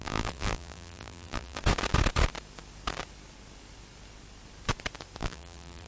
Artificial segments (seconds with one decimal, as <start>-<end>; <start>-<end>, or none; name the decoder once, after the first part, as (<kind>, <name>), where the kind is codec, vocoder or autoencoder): 0.0-1.6 (vocoder, BigVGAN v2); 5.2-5.9